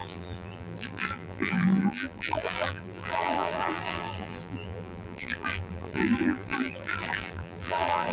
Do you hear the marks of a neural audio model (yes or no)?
yes